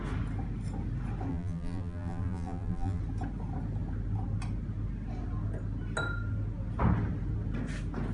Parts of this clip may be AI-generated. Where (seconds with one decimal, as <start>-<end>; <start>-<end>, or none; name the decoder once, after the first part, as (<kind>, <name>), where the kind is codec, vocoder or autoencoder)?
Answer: 1.3-3.0 (vocoder, BigVGAN v2)